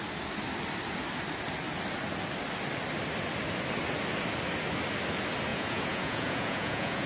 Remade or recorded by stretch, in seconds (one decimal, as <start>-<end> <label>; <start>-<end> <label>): 0.0-5.5 recorded; 5.5-7.1 remade